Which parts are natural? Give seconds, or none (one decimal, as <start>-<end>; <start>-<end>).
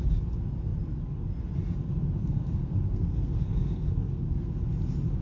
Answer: 0.0-2.2; 4.5-5.2